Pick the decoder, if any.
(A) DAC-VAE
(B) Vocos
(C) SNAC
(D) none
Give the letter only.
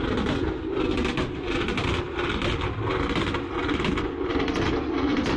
D